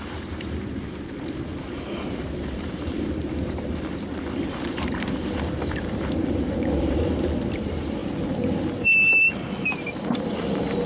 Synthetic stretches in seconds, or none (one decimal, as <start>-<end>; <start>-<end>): 0.0-8.0; 9.6-10.9